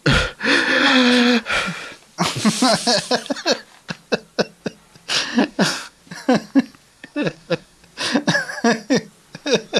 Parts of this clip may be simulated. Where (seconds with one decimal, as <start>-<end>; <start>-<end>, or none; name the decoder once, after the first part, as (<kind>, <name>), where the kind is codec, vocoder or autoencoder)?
5.4-6.0 (codec, SNAC); 6.9-7.8